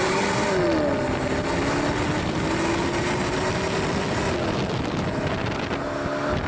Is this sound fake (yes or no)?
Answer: no